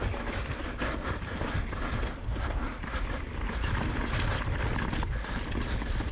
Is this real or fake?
real